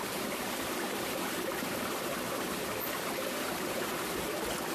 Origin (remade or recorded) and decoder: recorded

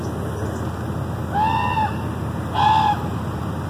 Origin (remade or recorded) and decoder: recorded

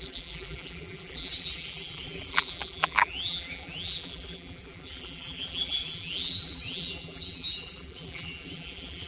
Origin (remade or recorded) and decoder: remade, vocoder, BigVGAN v2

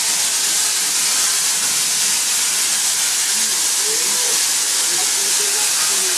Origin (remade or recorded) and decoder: recorded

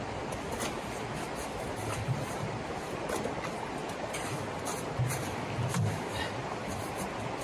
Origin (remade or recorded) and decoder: remade, vocoder, BigVGAN v2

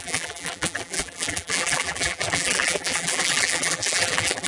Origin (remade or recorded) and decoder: remade, vocoder, BigVGAN v2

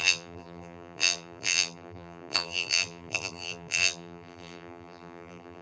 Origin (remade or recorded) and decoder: remade, vocoder, BigVGAN v2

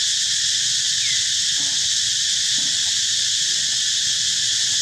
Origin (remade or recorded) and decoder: recorded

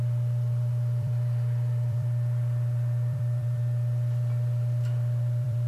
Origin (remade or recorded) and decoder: remade, vocoder, BigVGAN v2